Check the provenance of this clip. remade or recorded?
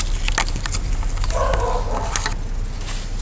recorded